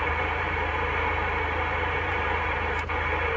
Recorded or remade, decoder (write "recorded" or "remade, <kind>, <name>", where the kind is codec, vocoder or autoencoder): remade, vocoder, BigVGAN v2